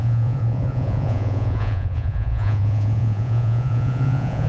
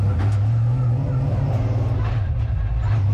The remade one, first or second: first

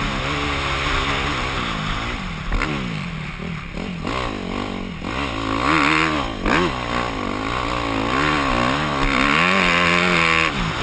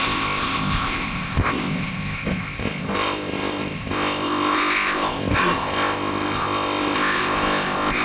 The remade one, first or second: second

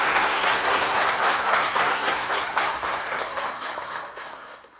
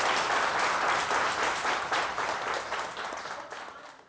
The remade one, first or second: first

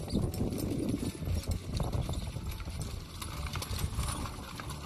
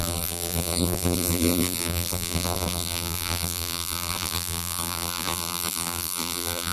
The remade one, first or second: second